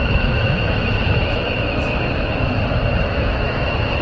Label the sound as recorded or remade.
remade